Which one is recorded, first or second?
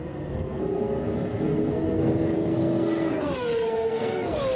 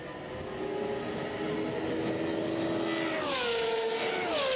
second